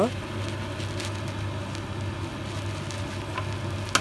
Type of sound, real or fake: real